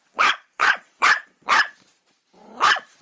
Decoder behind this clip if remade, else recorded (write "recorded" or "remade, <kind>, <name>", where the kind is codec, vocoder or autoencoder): remade, vocoder, Vocos